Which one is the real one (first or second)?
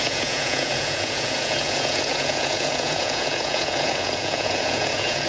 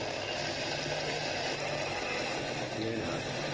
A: second